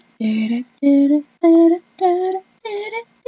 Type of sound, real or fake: real